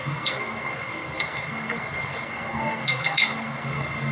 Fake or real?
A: fake